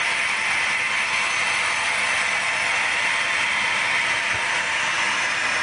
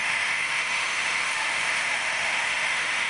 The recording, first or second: first